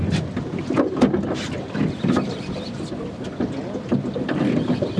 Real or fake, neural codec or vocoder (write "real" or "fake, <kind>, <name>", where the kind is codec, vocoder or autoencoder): real